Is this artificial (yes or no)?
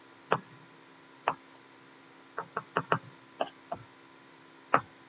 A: no